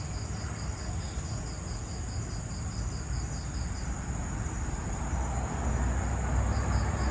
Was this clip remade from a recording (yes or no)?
no